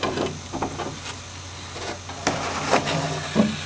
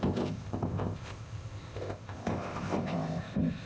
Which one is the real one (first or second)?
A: first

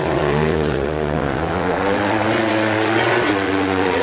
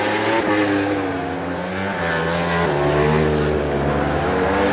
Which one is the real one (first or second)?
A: second